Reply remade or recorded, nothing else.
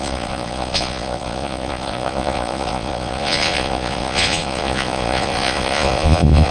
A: remade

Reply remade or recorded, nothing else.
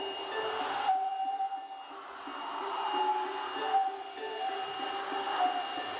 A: recorded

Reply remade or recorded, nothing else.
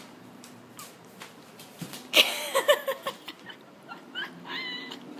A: remade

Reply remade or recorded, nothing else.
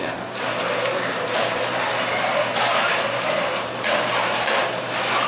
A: recorded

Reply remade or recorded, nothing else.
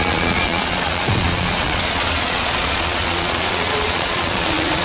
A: remade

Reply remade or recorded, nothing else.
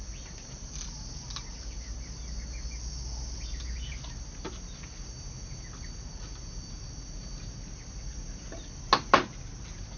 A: recorded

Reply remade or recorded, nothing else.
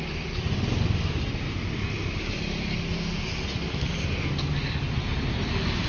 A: recorded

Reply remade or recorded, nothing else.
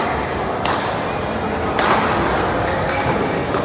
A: recorded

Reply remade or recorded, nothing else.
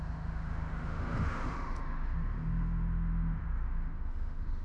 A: remade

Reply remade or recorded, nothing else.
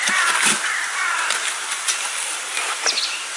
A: recorded